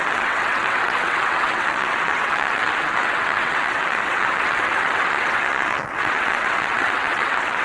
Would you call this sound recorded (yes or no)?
no